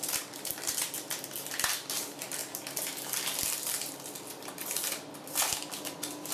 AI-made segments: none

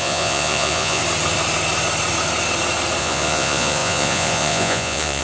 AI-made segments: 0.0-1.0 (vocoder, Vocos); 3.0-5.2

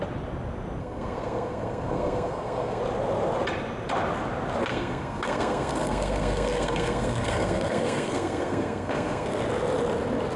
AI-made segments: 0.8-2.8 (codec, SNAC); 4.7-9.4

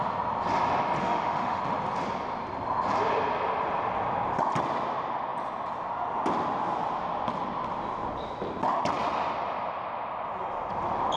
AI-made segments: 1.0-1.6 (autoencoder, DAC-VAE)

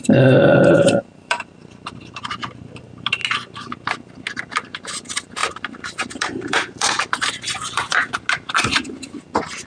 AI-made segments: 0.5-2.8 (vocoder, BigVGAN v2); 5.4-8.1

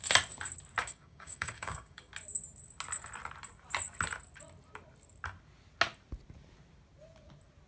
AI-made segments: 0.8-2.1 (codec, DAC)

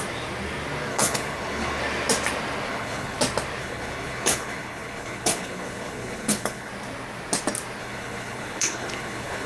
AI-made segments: 0.9-1.8 (codec, HILCodec); 2.7-3.2; 3.6-6.7; 7.8-9.5